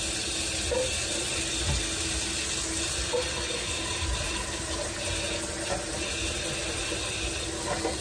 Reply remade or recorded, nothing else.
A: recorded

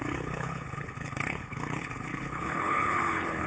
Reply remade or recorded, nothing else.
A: remade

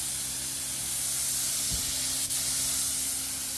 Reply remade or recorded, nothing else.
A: recorded